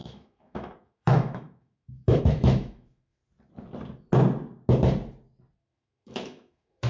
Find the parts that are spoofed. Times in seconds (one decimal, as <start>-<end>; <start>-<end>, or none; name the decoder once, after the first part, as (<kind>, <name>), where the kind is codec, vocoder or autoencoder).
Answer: 0.0-3.2 (autoencoder, DAC-VAE); 5.6-6.9